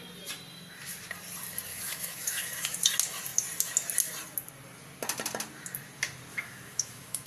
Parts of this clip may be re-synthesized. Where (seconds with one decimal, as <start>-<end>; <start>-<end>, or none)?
1.7-2.8; 6.3-7.3